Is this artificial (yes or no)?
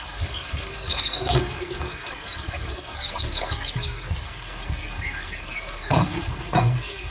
yes